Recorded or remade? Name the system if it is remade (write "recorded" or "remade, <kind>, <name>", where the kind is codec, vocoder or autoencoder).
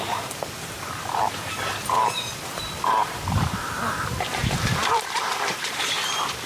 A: remade, vocoder, BigVGAN v2